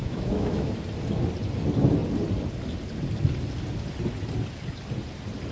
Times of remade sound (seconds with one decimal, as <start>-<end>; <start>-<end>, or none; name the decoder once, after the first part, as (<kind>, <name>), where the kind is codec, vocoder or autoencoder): 0.0-0.7 (autoencoder, DAC-VAE)